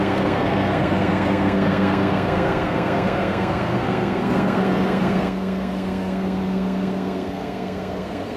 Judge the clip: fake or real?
fake